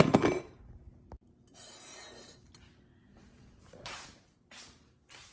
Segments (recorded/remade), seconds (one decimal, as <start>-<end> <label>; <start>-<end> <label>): 0.0-5.3 recorded